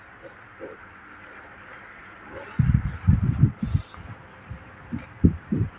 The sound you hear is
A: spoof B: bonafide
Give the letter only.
B